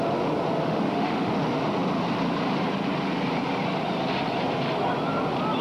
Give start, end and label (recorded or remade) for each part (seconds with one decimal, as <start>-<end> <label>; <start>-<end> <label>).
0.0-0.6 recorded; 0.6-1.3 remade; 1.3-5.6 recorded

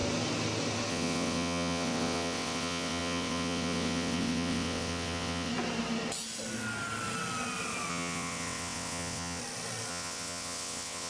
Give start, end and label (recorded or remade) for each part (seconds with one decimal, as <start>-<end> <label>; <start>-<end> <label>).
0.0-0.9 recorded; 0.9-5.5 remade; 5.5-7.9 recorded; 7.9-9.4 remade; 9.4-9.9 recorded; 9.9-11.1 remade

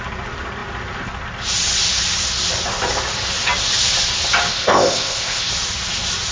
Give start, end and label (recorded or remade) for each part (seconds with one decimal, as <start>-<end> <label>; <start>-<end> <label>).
0.0-4.5 recorded; 4.5-5.5 remade; 5.5-6.3 recorded